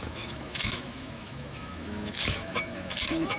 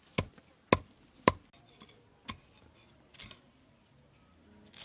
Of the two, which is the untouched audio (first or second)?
second